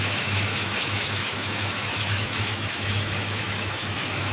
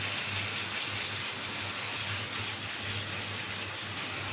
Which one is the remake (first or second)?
first